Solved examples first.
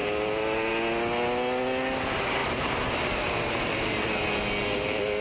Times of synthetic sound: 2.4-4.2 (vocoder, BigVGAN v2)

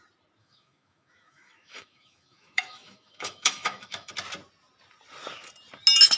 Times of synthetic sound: 0.4-4.1 (autoencoder, DAC-VAE)